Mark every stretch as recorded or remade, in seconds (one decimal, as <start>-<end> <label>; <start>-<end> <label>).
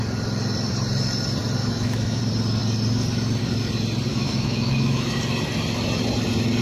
0.0-1.6 recorded; 1.6-2.2 remade; 2.2-4.1 recorded; 4.1-5.2 remade; 5.2-6.6 recorded